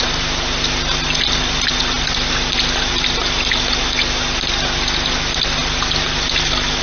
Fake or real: real